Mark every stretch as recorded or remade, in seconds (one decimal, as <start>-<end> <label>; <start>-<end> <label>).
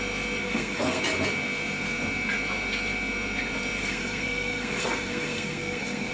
0.0-0.4 recorded; 0.4-1.0 remade; 1.0-3.8 recorded; 3.8-6.1 remade